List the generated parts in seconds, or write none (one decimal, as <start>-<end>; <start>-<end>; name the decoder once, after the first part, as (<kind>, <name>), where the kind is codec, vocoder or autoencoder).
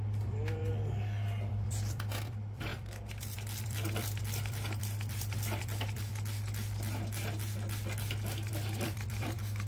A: 0.0-0.7 (vocoder, BigVGAN v2); 1.5-6.1; 8.5-9.7